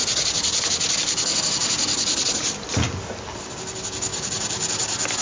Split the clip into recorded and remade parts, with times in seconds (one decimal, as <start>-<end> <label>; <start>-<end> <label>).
0.0-5.2 recorded